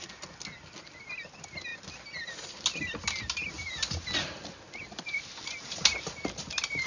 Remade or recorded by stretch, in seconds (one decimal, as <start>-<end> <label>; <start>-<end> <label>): 0.0-6.9 recorded